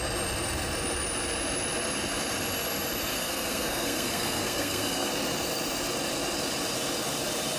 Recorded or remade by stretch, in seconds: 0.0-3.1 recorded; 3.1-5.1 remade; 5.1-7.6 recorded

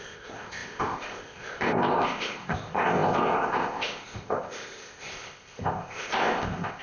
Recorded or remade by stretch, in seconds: 0.0-6.8 remade

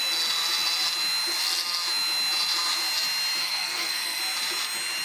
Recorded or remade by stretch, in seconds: 0.0-3.4 recorded; 3.4-4.2 remade; 4.2-5.0 recorded